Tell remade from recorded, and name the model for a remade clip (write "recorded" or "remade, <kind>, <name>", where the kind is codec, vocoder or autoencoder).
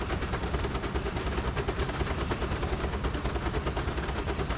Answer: recorded